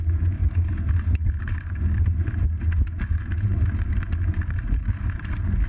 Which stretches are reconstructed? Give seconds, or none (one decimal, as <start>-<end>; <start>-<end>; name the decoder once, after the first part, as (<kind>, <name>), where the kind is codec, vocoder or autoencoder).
0.0-5.7 (vocoder, BigVGAN v2)